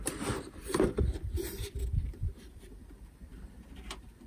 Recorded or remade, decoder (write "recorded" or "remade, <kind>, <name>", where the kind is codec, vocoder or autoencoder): remade, vocoder, BigVGAN v2